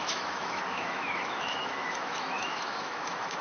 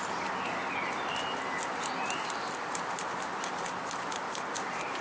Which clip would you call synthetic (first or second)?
first